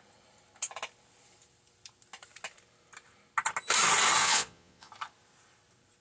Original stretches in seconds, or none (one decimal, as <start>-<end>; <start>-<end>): 0.0-4.2; 4.9-6.0